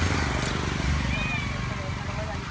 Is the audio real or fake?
real